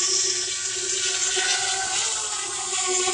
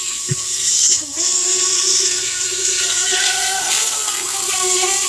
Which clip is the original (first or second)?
first